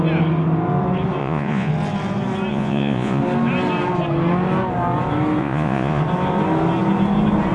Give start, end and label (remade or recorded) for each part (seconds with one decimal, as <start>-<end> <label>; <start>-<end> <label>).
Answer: 0.0-1.2 recorded; 1.2-1.7 remade; 1.7-2.5 recorded; 2.5-3.2 remade; 3.2-5.4 recorded; 5.4-6.0 remade; 6.0-7.5 recorded